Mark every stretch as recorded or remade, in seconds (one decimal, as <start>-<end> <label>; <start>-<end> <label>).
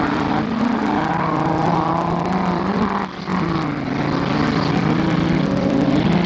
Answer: 0.0-3.3 remade; 3.3-4.7 recorded; 4.7-6.3 remade